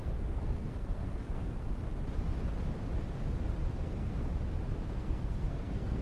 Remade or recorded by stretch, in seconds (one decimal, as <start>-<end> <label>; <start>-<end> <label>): 0.0-1.9 remade; 1.9-3.7 recorded; 3.7-4.3 remade; 4.3-4.9 recorded; 4.9-6.0 remade